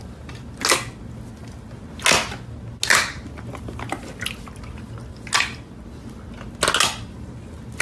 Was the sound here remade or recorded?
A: recorded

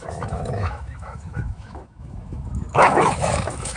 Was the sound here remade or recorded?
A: remade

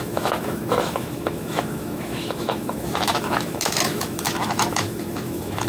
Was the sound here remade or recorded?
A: remade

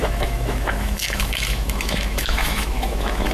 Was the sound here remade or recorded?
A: remade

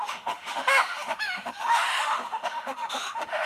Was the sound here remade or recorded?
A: remade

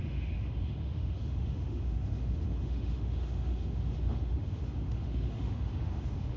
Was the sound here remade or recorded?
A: remade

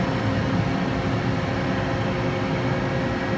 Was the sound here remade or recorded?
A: recorded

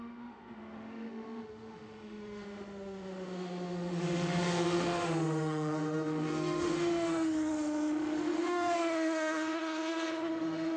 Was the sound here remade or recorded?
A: remade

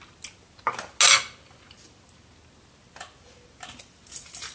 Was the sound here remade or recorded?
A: recorded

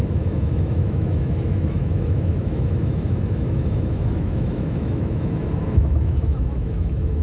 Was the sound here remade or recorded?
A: remade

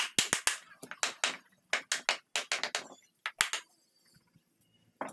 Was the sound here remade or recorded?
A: recorded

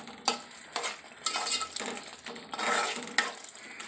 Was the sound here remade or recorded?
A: recorded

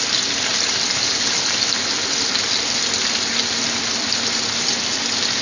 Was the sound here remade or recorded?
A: recorded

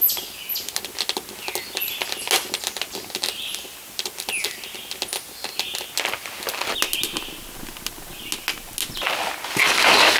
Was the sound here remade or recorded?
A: recorded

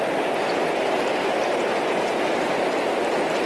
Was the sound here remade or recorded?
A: recorded